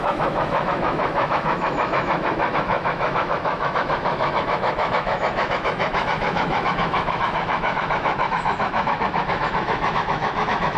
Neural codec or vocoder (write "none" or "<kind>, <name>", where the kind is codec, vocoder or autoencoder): autoencoder, DAC-VAE